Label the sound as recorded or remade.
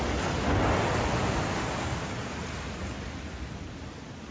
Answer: recorded